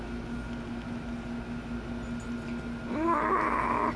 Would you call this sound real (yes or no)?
yes